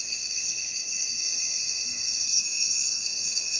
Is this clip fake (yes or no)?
yes